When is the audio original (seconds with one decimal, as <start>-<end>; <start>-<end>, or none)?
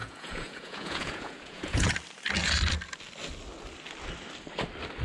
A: 1.9-5.0